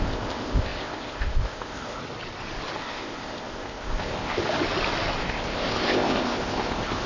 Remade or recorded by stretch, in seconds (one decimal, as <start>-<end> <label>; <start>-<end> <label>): 0.0-2.0 remade; 2.0-2.8 recorded; 2.8-4.4 remade; 4.4-5.2 recorded; 5.2-7.1 remade